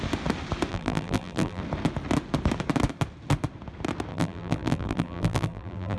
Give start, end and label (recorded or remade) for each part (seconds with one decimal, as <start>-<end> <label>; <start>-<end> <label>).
0.0-0.7 recorded; 0.7-1.6 remade; 1.6-4.1 recorded; 4.1-6.0 remade